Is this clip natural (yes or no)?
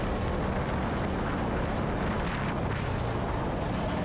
yes